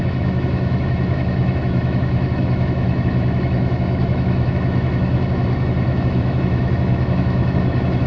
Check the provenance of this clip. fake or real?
fake